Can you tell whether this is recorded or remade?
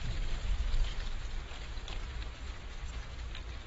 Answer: recorded